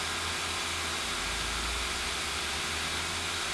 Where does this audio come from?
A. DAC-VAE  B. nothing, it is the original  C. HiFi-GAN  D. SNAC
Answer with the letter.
B